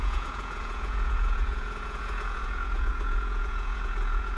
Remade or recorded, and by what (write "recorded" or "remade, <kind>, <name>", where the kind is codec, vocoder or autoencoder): remade, vocoder, Vocos